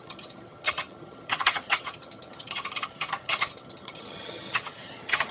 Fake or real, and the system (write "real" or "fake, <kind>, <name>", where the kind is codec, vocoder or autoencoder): fake, vocoder, HiFi-GAN